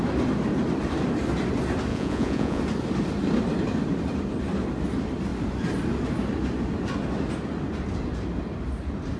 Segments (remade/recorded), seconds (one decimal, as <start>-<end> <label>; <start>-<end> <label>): 0.0-1.9 recorded; 1.9-2.6 remade; 2.6-9.2 recorded